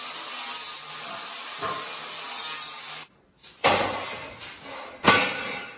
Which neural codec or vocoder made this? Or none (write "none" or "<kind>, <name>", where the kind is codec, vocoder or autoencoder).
none